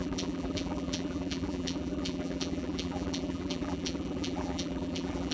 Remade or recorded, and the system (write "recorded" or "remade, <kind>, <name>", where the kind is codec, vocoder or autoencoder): remade, vocoder, BigVGAN v2